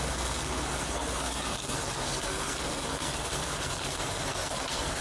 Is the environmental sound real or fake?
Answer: fake